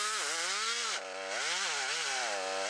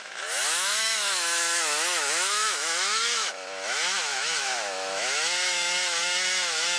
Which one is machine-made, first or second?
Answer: second